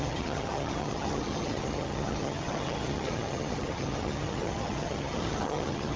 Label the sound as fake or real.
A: fake